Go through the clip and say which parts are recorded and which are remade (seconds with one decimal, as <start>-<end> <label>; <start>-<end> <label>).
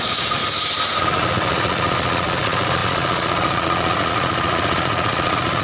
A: 0.0-0.4 remade; 0.4-1.0 recorded; 1.0-5.6 remade